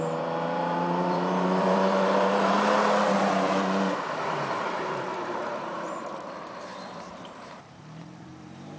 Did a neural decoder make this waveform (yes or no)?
yes